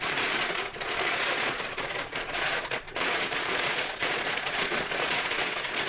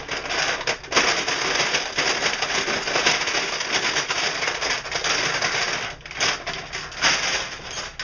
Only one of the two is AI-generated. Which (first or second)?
first